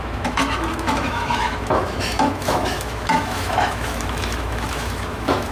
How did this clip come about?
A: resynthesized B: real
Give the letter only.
A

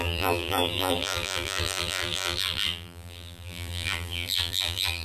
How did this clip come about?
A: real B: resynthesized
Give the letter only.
B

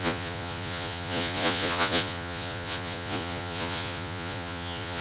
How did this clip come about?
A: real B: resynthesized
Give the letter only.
B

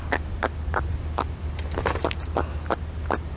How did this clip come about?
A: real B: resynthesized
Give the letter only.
A